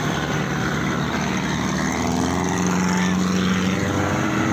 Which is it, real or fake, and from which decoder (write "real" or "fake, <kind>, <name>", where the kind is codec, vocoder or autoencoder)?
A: real